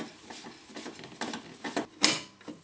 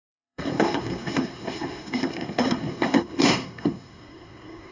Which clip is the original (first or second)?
first